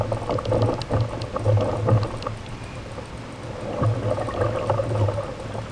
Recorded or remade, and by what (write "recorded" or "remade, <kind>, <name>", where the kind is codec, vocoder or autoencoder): recorded